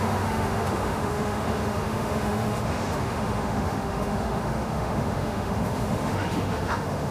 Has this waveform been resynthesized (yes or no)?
yes